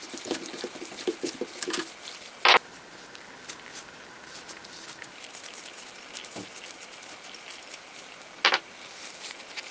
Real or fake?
real